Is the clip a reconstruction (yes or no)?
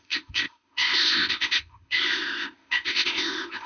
yes